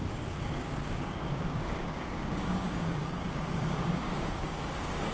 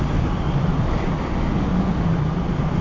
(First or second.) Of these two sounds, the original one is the second